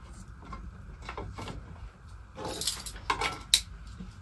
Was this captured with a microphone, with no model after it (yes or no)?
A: yes